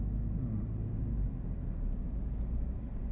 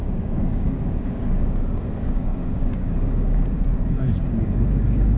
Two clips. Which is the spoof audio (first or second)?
second